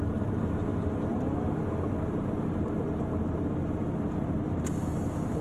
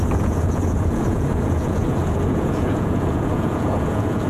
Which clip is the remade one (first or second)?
second